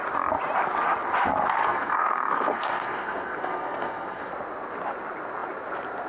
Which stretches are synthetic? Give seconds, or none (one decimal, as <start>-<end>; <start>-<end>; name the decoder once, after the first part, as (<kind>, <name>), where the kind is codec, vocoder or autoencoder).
1.6-4.3 (codec, SNAC)

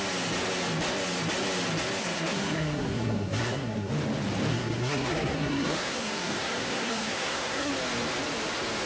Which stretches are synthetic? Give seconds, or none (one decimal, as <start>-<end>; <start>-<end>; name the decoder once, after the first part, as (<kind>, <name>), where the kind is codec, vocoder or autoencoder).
2.0-3.9 (codec, SNAC); 4.5-7.7